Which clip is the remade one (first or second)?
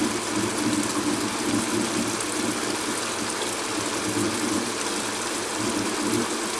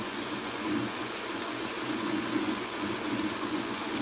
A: second